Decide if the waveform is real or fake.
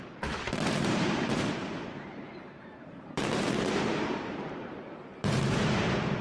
fake